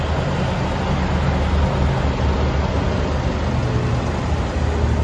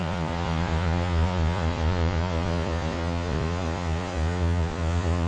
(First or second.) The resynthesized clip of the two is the second